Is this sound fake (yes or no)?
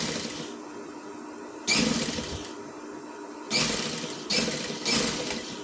no